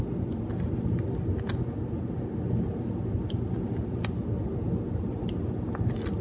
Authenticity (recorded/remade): recorded